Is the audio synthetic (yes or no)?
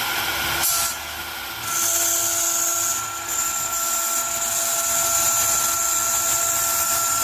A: no